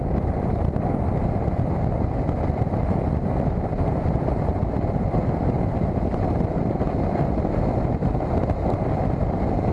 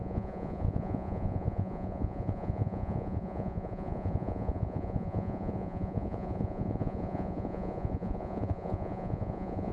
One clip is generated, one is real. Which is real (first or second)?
first